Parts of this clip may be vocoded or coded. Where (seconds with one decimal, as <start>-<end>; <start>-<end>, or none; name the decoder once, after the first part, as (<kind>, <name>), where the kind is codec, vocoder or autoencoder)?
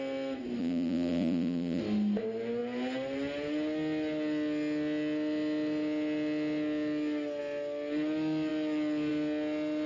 0.6-1.8 (vocoder, Vocos)